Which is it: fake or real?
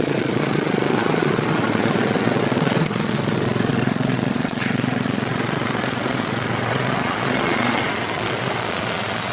fake